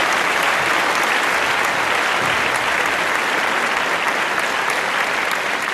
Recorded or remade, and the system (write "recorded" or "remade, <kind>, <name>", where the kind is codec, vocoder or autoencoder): recorded